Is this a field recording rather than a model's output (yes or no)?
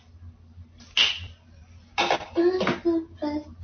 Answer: yes